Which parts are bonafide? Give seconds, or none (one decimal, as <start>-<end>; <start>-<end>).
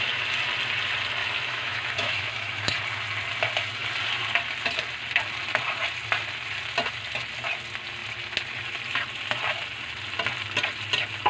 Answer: 0.0-1.2; 2.7-11.3